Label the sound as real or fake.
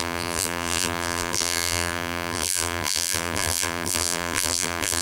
fake